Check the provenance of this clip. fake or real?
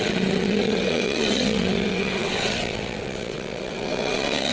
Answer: fake